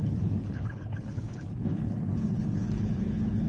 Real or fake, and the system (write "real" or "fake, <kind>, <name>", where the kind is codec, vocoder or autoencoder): fake, codec, HILCodec